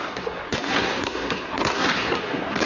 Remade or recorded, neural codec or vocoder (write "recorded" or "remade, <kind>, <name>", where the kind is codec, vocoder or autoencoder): remade, codec, SNAC